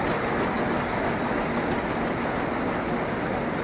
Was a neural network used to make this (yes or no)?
no